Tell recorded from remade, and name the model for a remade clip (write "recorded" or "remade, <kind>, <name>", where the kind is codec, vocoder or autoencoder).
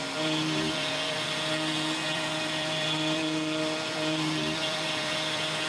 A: remade, vocoder, BigVGAN v2